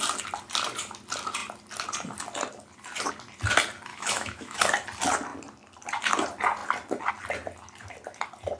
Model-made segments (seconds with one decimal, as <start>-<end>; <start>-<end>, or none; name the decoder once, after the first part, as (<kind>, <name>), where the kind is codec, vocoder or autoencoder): 3.9-4.6 (autoencoder, DAC-VAE)